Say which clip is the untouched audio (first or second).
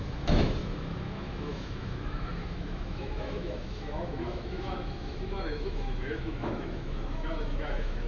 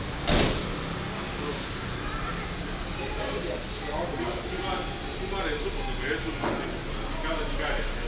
second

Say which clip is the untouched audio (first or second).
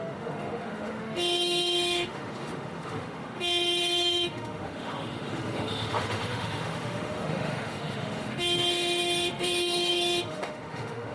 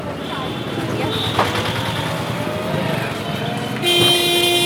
second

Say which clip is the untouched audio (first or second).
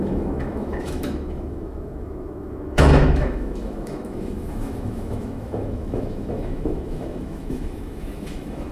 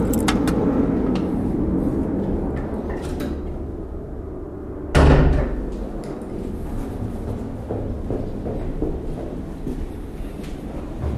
second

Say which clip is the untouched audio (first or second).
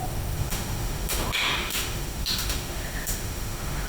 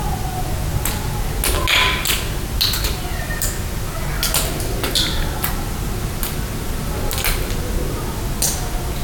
second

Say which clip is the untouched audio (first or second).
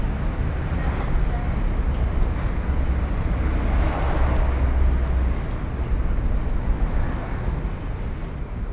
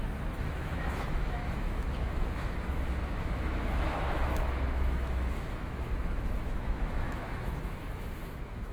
first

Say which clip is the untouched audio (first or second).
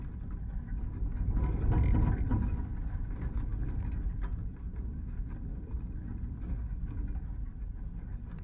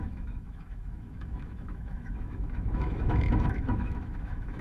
first